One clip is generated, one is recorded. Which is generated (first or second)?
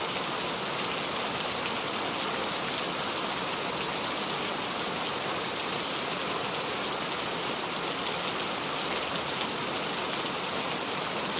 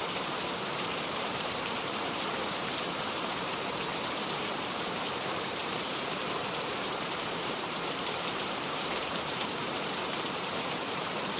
second